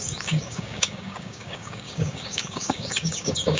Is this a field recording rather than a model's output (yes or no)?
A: no